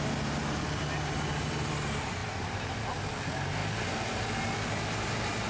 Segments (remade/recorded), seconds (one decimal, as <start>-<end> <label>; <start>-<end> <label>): 0.0-5.5 recorded